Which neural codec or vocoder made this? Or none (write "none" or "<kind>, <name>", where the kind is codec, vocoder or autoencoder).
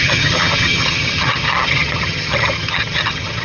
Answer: vocoder, HiFi-GAN